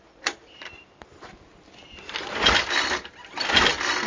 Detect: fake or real real